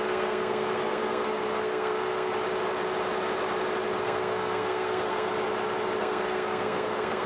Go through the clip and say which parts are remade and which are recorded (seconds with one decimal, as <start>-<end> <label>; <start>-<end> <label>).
0.0-2.3 remade; 2.3-4.0 recorded; 4.0-5.3 remade; 5.3-6.0 recorded; 6.0-7.3 remade